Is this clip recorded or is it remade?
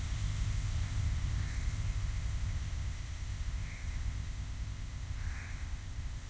remade